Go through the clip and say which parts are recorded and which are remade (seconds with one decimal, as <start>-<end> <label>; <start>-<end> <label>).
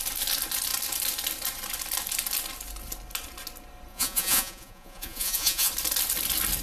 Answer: 0.0-3.9 recorded; 3.9-5.7 remade; 5.7-6.6 recorded